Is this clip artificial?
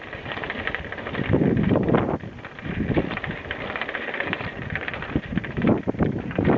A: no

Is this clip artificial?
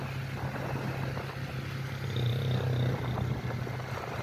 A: no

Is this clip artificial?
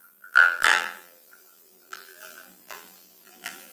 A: yes